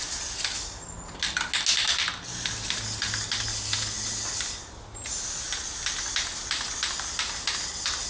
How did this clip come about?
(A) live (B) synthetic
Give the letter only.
A